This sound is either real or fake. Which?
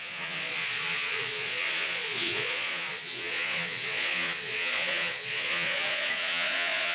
fake